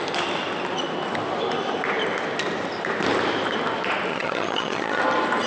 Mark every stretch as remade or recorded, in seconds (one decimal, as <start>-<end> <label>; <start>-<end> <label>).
0.0-4.1 recorded; 4.1-5.0 remade; 5.0-5.5 recorded